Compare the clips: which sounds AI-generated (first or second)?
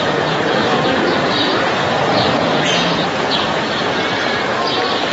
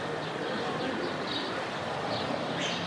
first